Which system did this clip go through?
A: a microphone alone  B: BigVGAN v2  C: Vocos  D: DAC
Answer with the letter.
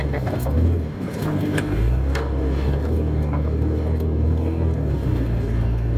D